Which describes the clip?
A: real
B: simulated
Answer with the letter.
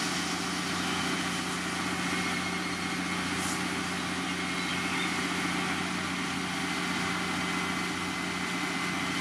A